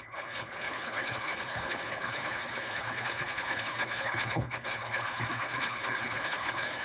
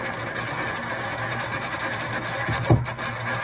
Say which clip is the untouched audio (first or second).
second